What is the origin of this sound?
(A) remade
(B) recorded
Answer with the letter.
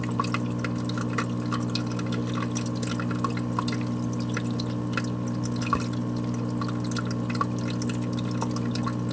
B